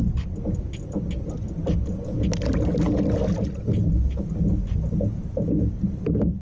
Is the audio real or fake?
real